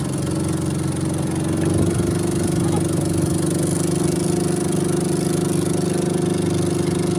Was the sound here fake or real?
real